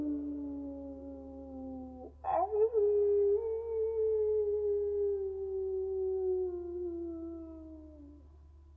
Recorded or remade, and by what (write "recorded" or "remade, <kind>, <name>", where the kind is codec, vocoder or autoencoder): recorded